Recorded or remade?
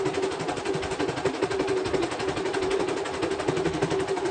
recorded